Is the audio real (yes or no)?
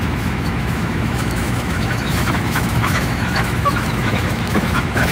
no